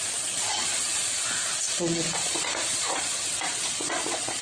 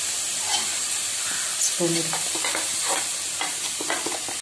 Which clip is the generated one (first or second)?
first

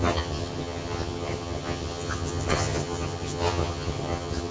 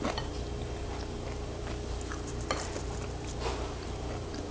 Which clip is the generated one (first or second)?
first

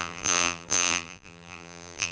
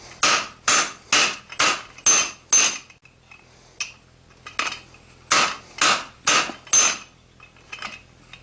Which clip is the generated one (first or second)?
first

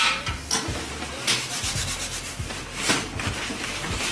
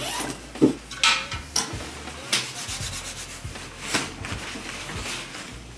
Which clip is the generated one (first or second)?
first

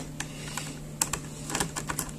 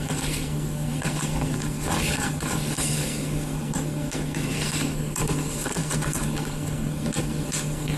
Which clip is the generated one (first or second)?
second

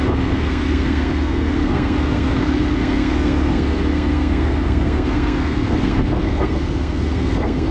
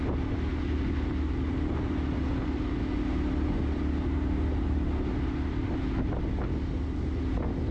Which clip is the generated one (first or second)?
first